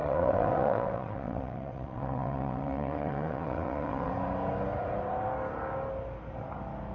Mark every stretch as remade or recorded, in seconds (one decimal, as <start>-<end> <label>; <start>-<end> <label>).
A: 0.0-4.1 remade; 4.1-6.9 recorded